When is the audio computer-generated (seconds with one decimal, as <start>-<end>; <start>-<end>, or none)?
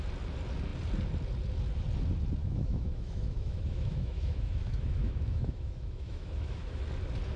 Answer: 2.4-6.8